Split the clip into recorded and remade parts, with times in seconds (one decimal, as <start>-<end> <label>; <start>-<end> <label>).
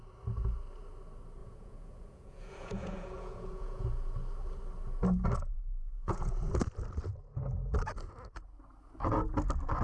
0.0-1.4 recorded; 1.4-4.1 remade; 4.1-5.5 recorded; 5.5-6.5 remade; 6.5-9.8 recorded